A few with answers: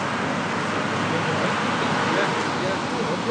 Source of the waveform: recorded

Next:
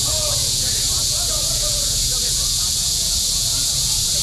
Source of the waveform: remade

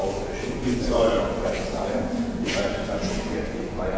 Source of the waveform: remade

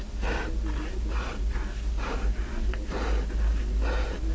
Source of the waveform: recorded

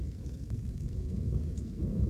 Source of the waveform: remade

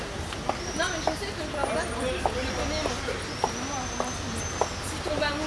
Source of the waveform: recorded